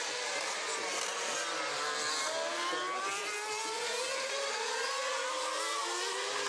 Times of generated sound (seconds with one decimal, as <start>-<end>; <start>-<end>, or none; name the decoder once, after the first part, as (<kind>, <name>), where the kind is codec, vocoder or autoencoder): none